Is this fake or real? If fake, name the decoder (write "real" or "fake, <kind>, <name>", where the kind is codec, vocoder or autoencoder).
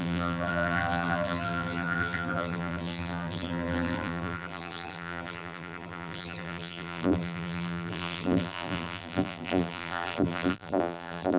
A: fake, vocoder, BigVGAN v2